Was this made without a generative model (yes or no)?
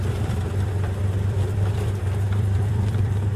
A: no